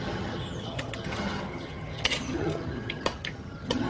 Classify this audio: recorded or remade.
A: remade